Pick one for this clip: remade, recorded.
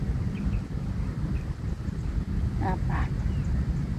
recorded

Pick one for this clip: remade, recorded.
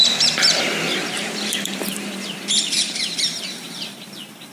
remade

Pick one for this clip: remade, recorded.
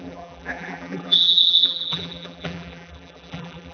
remade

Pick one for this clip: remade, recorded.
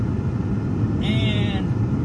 recorded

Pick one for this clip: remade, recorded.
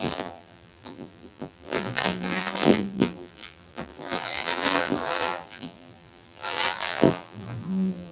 remade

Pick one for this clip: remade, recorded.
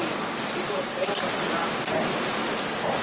recorded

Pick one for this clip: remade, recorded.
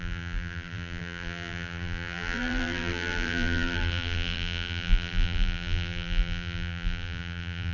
remade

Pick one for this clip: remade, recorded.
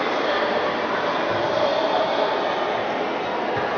recorded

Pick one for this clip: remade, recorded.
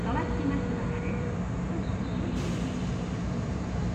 remade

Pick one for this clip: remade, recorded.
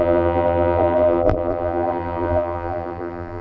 remade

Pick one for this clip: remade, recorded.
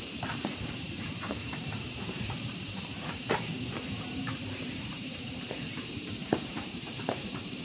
remade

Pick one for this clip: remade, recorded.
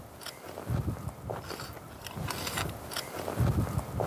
recorded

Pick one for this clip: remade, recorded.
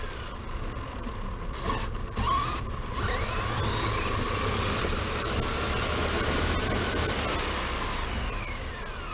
recorded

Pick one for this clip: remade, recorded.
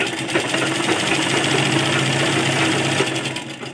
recorded